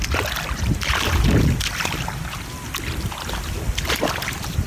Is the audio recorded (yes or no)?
yes